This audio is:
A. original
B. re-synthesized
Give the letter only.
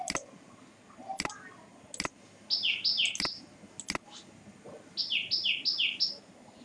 A